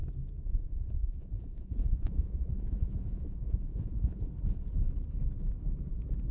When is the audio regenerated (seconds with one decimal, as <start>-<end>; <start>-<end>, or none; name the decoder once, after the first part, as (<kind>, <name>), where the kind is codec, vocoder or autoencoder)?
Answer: 0.5-4.3 (vocoder, Vocos)